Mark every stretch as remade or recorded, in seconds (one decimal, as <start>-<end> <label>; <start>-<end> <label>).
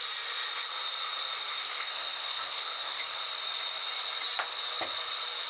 0.0-1.5 recorded; 1.5-3.0 remade; 3.0-5.5 recorded